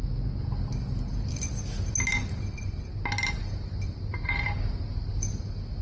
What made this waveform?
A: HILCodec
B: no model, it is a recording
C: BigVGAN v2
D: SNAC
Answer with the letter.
B